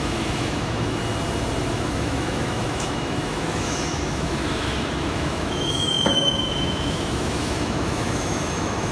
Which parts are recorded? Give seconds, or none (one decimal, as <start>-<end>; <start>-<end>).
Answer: 1.0-1.7